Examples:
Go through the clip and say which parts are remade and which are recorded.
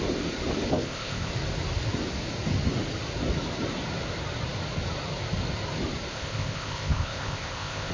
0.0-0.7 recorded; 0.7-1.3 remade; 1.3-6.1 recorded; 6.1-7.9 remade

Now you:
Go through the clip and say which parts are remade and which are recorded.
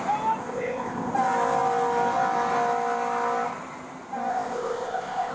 0.0-0.4 recorded; 0.4-1.1 remade; 1.1-4.3 recorded; 4.3-5.3 remade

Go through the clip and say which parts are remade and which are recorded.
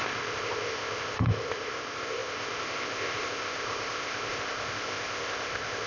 0.0-5.9 remade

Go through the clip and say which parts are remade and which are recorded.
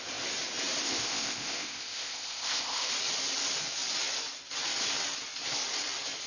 0.0-0.8 recorded; 0.8-2.9 remade; 2.9-6.3 recorded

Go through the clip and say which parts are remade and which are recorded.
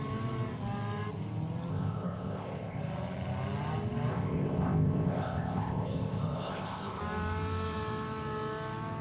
0.0-1.7 recorded; 1.7-2.8 remade; 2.8-4.1 recorded; 4.1-7.0 remade; 7.0-9.0 recorded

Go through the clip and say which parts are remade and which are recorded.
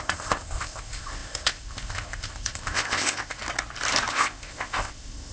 0.0-3.4 remade; 3.4-4.1 recorded; 4.1-5.3 remade